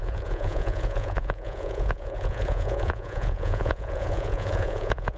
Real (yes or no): no